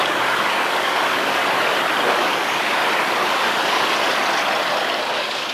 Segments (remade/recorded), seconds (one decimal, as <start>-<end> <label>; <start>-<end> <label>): 0.0-1.4 remade; 1.4-2.1 recorded; 2.1-2.8 remade; 2.8-5.0 recorded; 5.0-5.5 remade